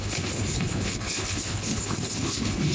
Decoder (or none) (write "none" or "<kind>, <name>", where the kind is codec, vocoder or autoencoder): codec, HILCodec